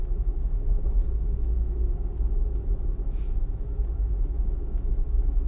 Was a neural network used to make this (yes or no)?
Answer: yes